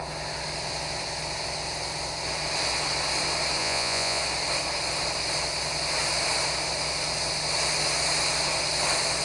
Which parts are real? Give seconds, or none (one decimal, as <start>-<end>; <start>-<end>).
0.0-3.6; 4.2-9.2